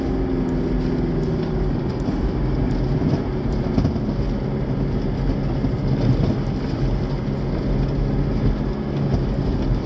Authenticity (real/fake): real